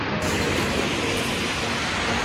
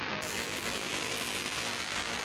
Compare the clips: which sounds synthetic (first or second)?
second